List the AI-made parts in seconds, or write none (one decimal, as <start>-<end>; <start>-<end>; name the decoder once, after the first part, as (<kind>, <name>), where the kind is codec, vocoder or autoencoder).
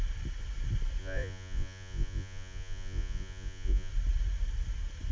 1.0-3.9 (vocoder, Vocos)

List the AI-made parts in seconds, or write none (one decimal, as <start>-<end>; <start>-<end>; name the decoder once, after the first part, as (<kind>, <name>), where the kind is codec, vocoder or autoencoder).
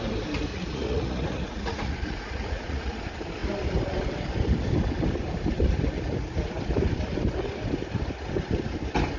0.5-3.0 (vocoder, Vocos)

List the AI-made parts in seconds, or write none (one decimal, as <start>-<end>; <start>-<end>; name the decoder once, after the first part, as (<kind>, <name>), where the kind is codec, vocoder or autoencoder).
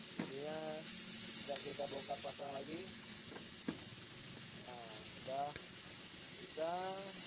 1.7-3.5 (vocoder, Vocos)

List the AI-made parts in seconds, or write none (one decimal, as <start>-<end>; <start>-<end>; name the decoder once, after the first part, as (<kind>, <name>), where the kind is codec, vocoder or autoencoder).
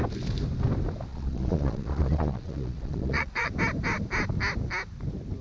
1.1-3.5 (vocoder, Vocos)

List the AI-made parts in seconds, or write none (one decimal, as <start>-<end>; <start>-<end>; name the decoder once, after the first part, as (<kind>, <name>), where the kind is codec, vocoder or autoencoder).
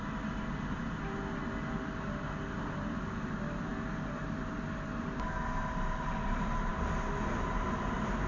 none